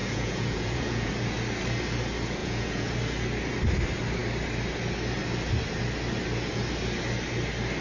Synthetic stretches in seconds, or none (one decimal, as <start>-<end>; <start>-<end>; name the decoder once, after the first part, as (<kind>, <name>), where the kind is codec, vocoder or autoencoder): 0.0-1.1 (vocoder, Vocos); 2.4-2.9